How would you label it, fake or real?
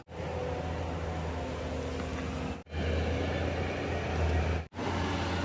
real